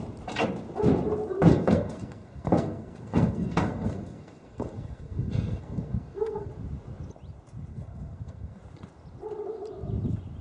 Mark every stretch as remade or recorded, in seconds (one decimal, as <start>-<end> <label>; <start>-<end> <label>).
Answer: 0.0-1.5 recorded; 1.5-6.5 remade; 6.5-7.7 recorded; 7.7-8.6 remade; 8.6-10.4 recorded